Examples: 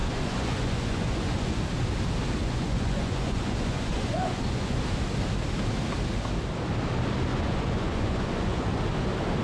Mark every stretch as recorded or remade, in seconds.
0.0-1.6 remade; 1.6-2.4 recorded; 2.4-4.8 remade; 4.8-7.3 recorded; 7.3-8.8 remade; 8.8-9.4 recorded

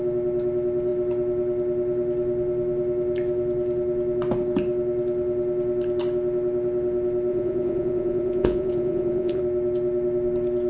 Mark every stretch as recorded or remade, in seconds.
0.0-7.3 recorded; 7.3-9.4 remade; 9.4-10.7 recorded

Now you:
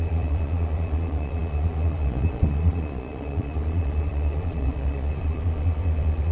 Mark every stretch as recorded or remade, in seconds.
0.0-6.3 remade

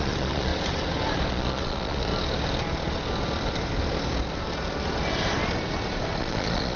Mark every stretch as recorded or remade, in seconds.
0.0-0.5 remade; 0.5-1.3 recorded; 1.3-2.1 remade; 2.1-6.2 recorded; 6.2-6.8 remade

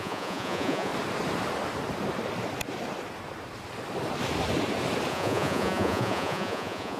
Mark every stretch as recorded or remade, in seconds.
0.0-0.9 remade; 0.9-5.1 recorded; 5.1-7.0 remade

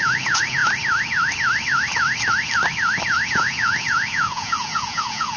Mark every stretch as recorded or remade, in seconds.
0.0-0.6 remade; 0.6-3.3 recorded; 3.3-5.4 remade